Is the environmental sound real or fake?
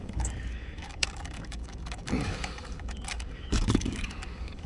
fake